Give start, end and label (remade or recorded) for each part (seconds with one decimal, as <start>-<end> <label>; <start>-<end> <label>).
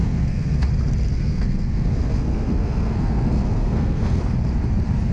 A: 0.0-0.7 remade; 0.7-1.1 recorded; 1.1-4.2 remade; 4.2-5.1 recorded